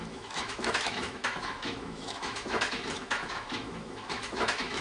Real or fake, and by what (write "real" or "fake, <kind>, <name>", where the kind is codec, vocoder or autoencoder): fake, autoencoder, DAC-VAE